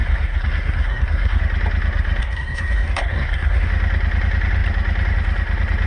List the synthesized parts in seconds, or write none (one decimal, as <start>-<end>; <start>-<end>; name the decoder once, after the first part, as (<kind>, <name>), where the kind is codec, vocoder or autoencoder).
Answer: 0.0-1.4 (codec, SNAC); 2.2-3.7